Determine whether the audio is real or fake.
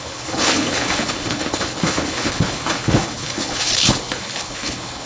fake